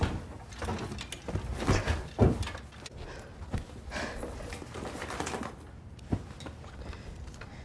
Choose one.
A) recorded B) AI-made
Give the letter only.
A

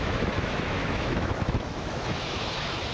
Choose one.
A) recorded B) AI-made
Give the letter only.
B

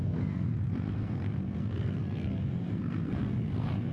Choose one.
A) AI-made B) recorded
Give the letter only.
A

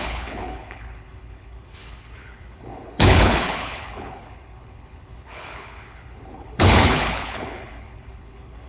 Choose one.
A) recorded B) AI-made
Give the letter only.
B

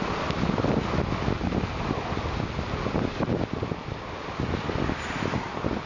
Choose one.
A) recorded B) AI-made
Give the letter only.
A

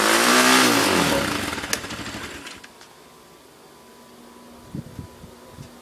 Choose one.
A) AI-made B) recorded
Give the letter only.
B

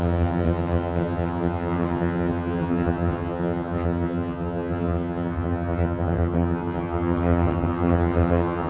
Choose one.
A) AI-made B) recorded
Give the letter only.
A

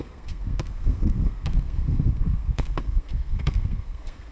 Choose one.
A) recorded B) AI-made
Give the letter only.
B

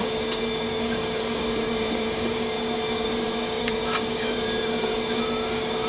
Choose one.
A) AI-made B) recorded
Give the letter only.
A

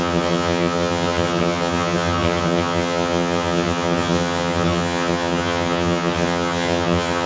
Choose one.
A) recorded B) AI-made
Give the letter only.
B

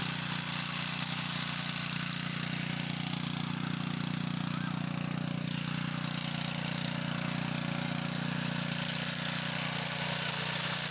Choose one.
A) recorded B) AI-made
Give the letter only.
A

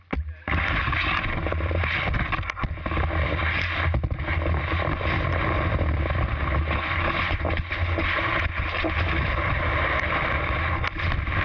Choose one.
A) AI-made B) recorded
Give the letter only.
B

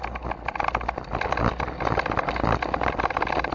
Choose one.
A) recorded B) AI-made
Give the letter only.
A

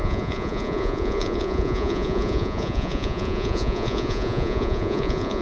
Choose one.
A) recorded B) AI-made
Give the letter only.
B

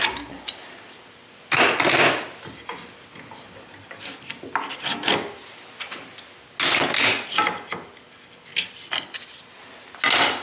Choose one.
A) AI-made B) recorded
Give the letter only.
B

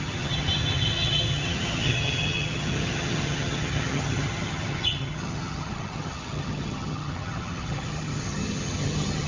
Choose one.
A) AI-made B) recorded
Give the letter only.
A